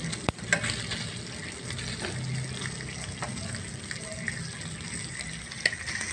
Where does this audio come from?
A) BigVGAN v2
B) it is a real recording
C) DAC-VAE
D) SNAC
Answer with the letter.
B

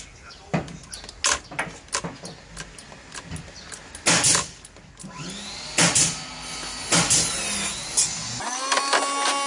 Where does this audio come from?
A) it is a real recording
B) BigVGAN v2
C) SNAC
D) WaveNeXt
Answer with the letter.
A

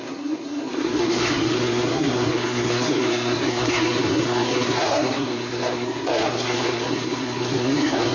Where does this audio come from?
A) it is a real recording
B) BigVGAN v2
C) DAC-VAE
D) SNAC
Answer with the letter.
D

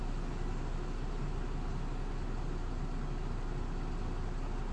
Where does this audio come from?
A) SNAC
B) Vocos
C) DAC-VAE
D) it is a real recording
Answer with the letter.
D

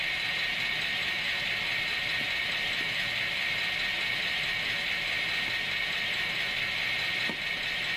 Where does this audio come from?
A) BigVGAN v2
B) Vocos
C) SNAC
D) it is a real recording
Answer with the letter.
D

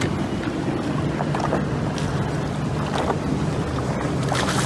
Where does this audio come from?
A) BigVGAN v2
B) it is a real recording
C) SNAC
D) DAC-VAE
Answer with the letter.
B